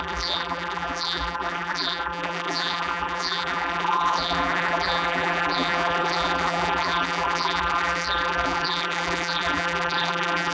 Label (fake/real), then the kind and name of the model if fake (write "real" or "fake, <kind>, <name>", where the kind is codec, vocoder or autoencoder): fake, vocoder, BigVGAN v2